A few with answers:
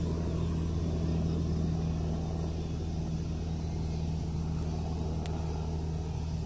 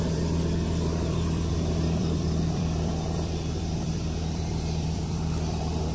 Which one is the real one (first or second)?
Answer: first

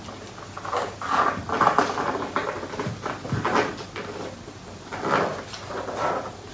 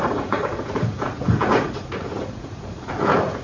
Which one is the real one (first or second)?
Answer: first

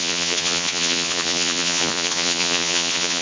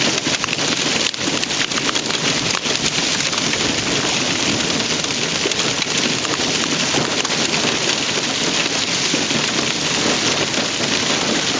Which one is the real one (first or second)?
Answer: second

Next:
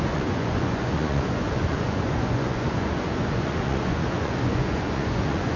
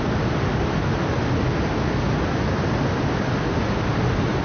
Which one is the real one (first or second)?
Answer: second